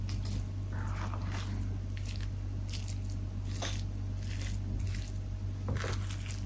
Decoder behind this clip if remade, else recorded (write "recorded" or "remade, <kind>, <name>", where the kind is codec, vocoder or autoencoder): recorded